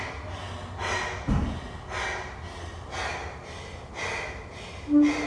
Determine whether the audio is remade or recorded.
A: recorded